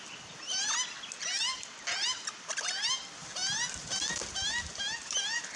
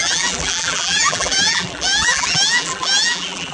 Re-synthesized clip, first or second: second